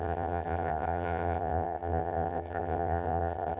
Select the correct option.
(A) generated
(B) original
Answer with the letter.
A